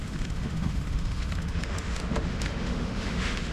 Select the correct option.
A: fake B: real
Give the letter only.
A